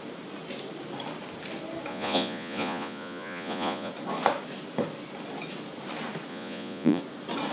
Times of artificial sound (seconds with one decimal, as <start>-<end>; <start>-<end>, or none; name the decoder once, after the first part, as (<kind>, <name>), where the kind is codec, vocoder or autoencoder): 1.9-3.9 (vocoder, Vocos); 6.3-7.0